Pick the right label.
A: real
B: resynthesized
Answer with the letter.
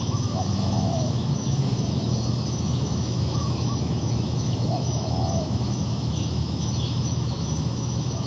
B